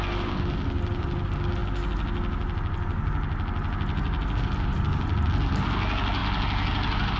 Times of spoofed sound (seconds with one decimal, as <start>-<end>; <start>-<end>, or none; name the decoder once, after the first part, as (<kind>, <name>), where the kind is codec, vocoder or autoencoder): none

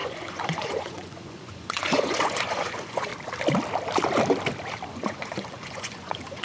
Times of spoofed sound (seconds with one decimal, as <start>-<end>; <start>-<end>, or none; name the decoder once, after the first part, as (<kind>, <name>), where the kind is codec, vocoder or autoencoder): 0.0-3.1 (vocoder, Vocos); 4.9-6.4

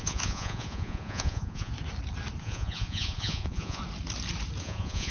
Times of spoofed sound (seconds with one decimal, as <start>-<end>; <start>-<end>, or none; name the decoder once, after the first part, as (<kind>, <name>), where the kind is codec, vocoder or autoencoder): 0.0-1.7 (vocoder, Vocos); 2.4-3.8; 4.6-5.1

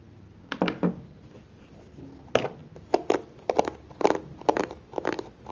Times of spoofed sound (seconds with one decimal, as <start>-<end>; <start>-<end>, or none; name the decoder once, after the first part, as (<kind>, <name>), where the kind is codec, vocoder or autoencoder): none

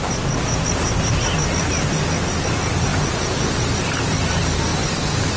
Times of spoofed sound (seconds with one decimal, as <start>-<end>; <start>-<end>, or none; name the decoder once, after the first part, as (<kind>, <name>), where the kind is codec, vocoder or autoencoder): 2.9-3.6 (vocoder, Vocos)

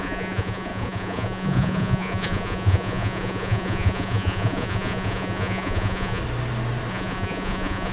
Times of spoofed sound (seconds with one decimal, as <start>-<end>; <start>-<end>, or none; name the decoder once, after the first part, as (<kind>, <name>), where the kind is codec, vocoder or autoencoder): 0.0-6.2 (vocoder, Vocos); 6.9-7.9

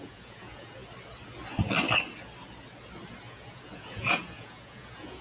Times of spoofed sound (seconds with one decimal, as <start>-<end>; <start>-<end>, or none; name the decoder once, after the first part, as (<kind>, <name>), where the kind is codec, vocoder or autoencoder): 0.0-0.8 (vocoder, Vocos); 3.3-5.2

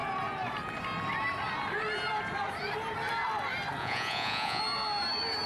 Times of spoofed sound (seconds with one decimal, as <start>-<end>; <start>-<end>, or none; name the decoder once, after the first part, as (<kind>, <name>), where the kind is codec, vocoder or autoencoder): 3.8-4.6 (vocoder, Vocos)